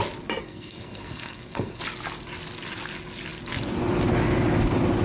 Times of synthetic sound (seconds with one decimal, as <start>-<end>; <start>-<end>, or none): 0.4-1.8